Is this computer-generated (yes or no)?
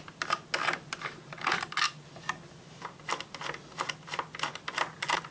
no